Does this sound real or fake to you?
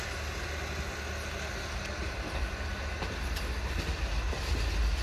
real